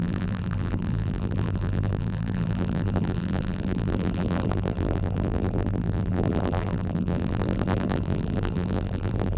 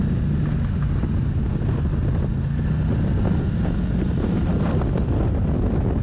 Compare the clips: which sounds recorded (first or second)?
second